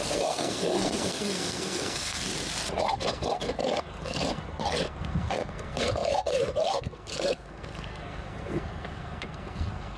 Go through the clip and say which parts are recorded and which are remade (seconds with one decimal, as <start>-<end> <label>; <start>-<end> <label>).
0.0-2.3 remade; 2.3-2.8 recorded; 2.8-10.0 remade